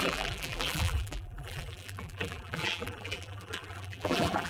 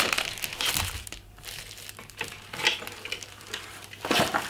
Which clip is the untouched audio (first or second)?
second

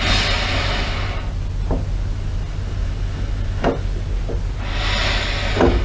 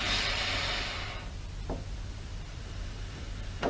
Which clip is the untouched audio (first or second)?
first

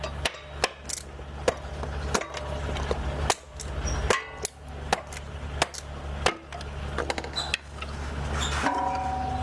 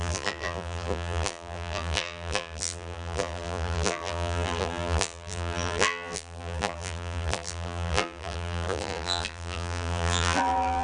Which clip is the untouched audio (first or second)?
first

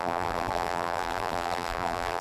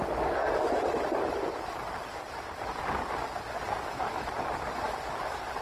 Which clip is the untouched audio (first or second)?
second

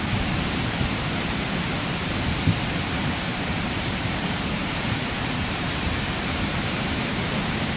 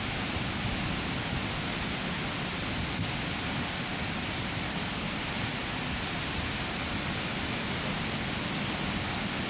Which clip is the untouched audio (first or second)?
second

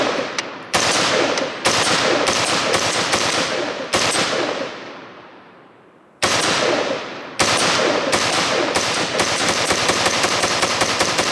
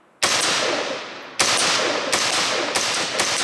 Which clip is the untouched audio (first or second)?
second